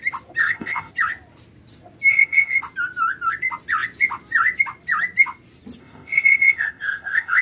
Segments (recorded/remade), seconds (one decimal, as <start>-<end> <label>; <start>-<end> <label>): 0.0-0.4 recorded; 0.4-0.9 remade; 0.9-2.1 recorded; 2.1-2.6 remade; 2.6-5.8 recorded; 5.8-7.4 remade